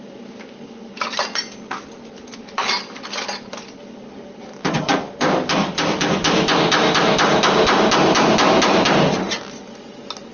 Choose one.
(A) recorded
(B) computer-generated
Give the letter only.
A